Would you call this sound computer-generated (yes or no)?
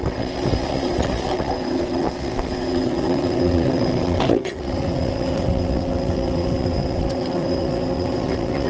yes